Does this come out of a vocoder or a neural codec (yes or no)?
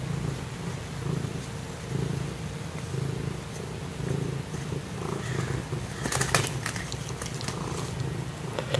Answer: no